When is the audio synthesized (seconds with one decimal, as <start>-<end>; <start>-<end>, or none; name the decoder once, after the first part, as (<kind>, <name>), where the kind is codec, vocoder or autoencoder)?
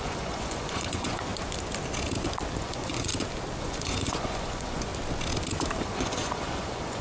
0.0-1.3 (vocoder, Vocos); 2.6-3.1; 3.6-4.9; 5.8-7.0